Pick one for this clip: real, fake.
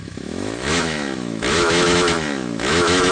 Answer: fake